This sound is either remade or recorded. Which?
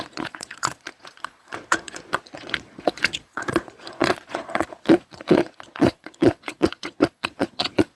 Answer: remade